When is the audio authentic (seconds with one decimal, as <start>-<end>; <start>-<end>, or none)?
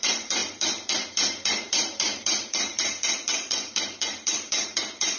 none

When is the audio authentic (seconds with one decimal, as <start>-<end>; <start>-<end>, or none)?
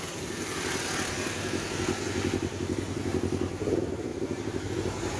0.0-4.1; 4.7-5.2